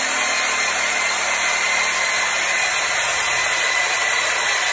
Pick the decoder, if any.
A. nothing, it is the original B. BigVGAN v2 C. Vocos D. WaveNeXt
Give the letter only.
A